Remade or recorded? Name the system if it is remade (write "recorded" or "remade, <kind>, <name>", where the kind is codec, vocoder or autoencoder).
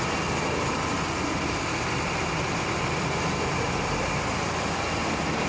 recorded